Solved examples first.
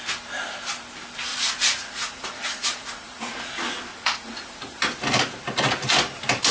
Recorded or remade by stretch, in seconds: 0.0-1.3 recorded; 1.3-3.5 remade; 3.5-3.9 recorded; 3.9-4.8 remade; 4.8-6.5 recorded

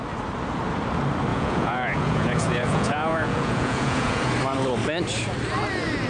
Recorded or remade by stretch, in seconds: 0.0-1.3 recorded; 1.3-4.3 remade; 4.3-6.1 recorded

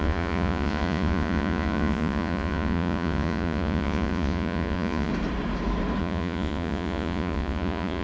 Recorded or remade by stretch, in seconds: 0.0-5.1 remade; 5.1-6.0 recorded; 6.0-8.0 remade